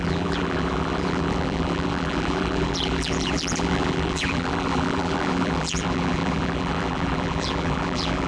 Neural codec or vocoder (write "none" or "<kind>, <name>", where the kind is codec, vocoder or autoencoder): vocoder, BigVGAN v2